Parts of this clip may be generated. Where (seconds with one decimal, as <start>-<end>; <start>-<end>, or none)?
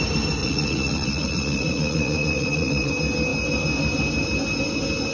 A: 0.4-2.9